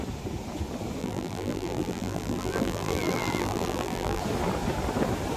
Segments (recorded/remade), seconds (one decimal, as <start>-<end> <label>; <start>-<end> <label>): 0.0-1.0 recorded; 1.0-4.2 remade; 4.2-5.4 recorded